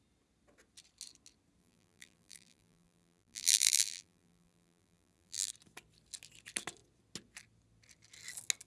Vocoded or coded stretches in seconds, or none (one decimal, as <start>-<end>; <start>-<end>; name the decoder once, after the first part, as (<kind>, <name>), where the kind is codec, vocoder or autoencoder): 1.6-5.5 (vocoder, BigVGAN v2)